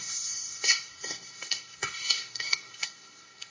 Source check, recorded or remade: remade